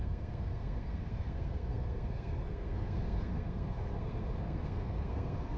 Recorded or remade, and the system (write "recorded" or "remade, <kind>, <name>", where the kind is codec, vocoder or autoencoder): remade, codec, SNAC